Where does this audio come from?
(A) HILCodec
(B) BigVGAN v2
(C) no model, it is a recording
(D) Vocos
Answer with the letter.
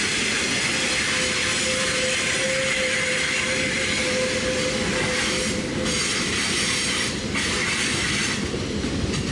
C